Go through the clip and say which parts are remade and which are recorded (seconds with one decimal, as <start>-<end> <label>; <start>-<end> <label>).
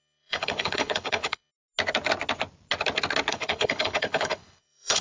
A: 0.0-1.5 remade; 1.5-3.3 recorded; 3.3-5.0 remade